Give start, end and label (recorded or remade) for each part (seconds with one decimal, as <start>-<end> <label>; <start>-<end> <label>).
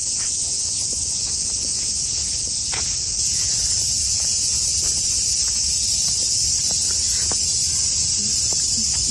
0.0-3.6 remade; 3.6-4.1 recorded; 4.1-4.7 remade; 4.7-9.1 recorded